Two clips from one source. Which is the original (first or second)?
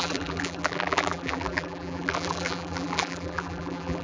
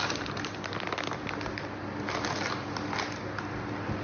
second